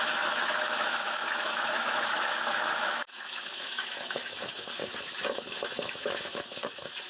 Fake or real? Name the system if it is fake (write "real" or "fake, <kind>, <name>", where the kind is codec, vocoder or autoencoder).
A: fake, autoencoder, DAC-VAE